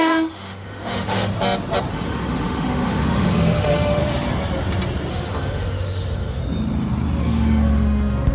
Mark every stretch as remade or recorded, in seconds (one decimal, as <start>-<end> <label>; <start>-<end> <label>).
0.0-1.3 remade; 1.3-1.9 recorded; 1.9-4.0 remade; 4.0-5.1 recorded; 5.1-6.4 remade; 6.4-7.2 recorded; 7.2-8.3 remade